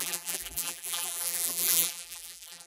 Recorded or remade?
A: remade